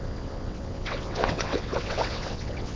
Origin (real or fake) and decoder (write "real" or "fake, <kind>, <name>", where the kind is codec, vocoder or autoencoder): fake, vocoder, WaveNeXt